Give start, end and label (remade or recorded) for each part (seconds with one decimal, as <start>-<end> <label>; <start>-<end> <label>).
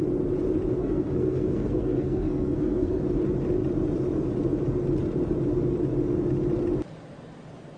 0.0-0.8 recorded; 0.8-3.0 remade; 3.0-7.8 recorded